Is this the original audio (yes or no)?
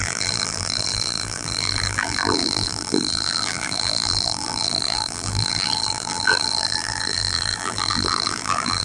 no